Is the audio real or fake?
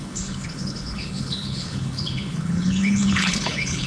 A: fake